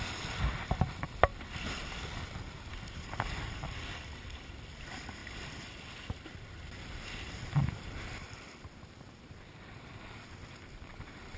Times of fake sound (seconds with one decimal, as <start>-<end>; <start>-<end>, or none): 0.0-1.3; 1.9-5.2; 6.7-11.4

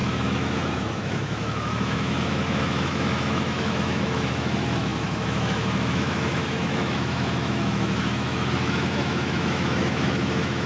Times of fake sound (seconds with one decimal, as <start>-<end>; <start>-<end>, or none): 0.0-10.7